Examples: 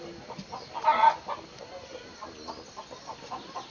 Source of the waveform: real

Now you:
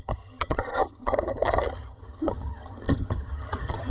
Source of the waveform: fake